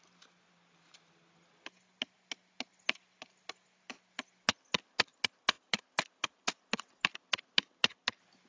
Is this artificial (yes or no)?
no